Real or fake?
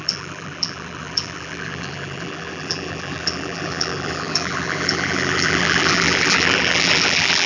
fake